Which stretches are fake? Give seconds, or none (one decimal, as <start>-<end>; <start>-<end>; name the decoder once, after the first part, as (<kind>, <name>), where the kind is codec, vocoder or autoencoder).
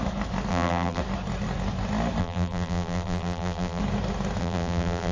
0.5-1.0 (vocoder, BigVGAN v2); 2.2-3.8; 4.4-5.1